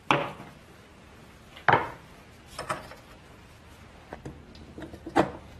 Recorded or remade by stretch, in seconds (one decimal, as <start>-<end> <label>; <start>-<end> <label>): 0.0-5.6 recorded